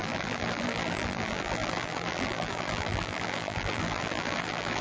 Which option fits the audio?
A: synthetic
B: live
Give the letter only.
A